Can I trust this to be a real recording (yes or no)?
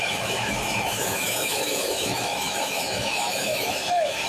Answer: no